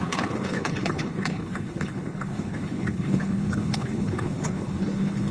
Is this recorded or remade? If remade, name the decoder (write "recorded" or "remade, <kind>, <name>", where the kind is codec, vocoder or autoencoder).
remade, codec, HILCodec